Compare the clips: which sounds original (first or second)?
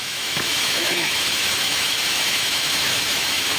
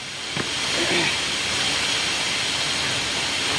second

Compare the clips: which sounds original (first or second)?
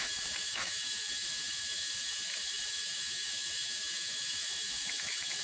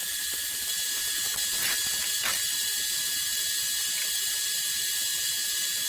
second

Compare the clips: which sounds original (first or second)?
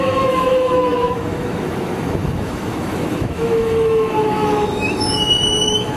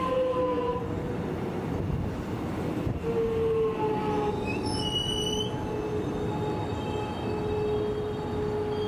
second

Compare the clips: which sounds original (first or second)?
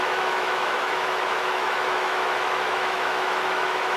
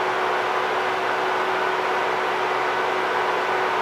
second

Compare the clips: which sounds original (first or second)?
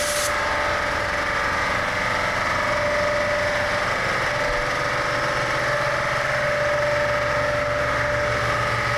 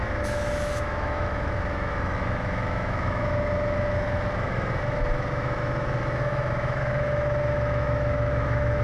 first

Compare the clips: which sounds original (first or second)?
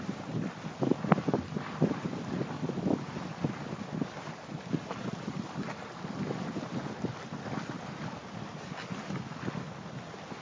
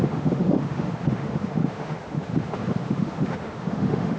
first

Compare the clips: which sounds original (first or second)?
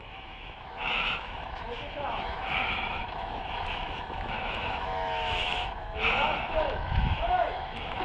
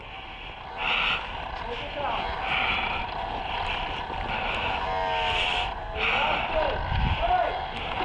second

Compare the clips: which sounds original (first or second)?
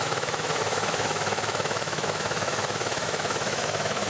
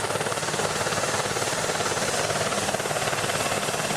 second